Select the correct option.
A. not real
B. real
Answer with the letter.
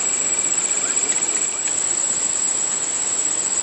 B